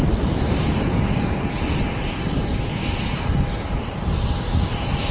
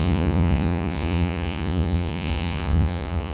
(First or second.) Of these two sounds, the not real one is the second